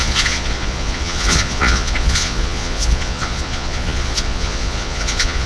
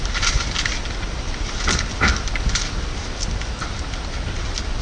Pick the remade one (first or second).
first